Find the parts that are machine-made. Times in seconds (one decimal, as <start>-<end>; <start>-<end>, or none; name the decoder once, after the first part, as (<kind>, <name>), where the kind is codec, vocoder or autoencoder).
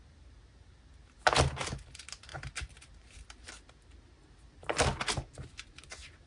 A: none